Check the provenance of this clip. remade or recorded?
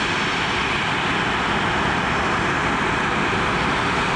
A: remade